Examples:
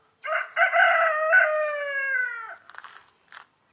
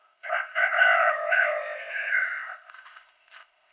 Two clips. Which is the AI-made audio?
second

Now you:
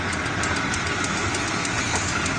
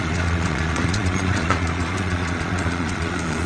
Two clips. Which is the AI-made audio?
second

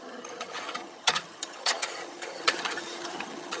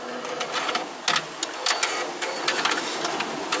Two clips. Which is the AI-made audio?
first